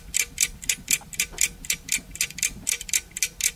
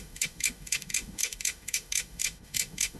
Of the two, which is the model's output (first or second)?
second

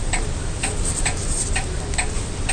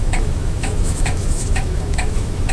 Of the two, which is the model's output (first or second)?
second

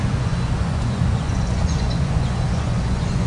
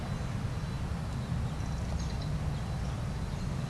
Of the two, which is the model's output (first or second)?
first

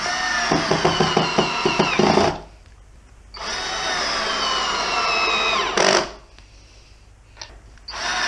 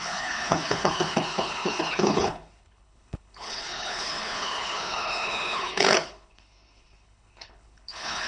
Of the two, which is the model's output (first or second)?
second